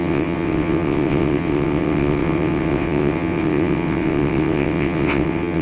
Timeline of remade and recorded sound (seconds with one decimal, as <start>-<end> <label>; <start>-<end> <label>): 0.0-5.6 remade